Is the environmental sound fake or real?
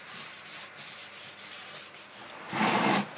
real